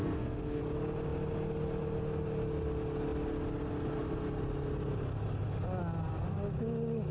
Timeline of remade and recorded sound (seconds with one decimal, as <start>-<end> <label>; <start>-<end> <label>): 0.0-0.6 remade; 0.6-7.1 recorded